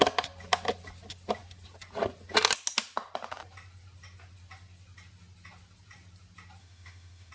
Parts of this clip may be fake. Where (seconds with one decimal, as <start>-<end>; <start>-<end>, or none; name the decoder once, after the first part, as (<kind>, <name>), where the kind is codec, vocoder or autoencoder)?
6.6-7.3 (autoencoder, DAC-VAE)